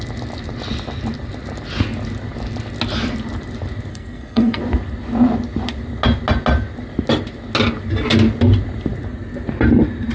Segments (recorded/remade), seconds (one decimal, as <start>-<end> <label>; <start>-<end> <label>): 0.0-3.9 recorded; 3.9-4.6 remade; 4.6-10.1 recorded